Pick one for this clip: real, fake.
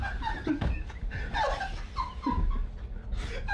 real